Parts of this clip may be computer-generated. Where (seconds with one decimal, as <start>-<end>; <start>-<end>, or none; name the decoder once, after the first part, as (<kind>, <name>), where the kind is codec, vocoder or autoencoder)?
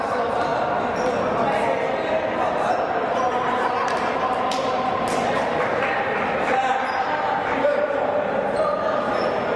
0.0-0.5 (vocoder, BigVGAN v2); 2.5-9.6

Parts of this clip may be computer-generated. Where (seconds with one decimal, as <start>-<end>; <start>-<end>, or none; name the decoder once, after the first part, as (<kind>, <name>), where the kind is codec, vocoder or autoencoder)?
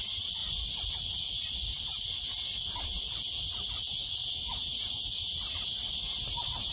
0.4-1.0 (vocoder, BigVGAN v2); 4.2-5.5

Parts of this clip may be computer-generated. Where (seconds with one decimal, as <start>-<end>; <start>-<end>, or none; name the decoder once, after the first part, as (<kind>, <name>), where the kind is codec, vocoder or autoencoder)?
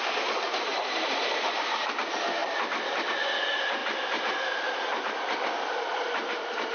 0.7-2.0 (vocoder, BigVGAN v2); 3.8-5.1; 5.9-6.7